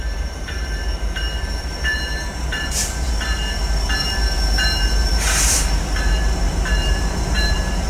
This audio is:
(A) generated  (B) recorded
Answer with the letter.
A